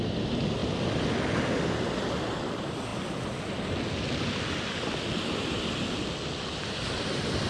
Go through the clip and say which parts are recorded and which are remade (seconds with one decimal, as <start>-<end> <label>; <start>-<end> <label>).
0.0-7.5 recorded

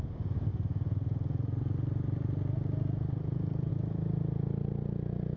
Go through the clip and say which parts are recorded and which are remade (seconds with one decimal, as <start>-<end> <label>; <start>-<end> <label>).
0.0-5.4 recorded

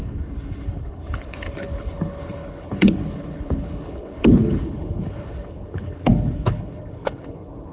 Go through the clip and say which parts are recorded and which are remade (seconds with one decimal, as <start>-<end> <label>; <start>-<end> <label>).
0.0-7.7 remade

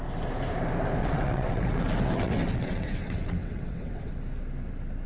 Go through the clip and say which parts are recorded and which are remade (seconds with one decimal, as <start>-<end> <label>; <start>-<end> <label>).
0.0-1.0 recorded; 1.0-4.1 remade; 4.1-5.1 recorded